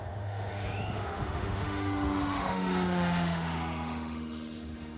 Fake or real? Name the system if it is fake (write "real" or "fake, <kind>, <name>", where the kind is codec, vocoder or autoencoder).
fake, autoencoder, DAC-VAE